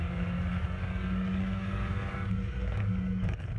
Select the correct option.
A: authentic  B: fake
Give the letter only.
B